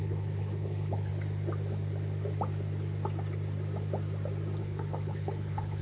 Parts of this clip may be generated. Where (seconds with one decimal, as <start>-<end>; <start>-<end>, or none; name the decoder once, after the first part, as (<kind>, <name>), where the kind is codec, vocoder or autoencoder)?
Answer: 0.0-1.1 (codec, HILCodec); 4.6-5.8